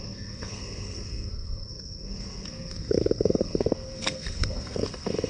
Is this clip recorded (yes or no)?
no